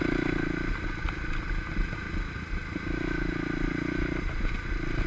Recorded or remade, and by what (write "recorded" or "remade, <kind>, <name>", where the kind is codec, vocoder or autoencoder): recorded